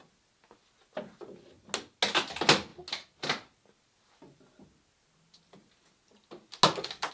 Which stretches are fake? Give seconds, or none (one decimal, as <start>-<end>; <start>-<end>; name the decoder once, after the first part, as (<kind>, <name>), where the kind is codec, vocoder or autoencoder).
none